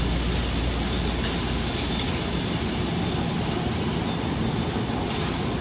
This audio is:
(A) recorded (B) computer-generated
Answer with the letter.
A